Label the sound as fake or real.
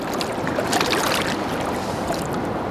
real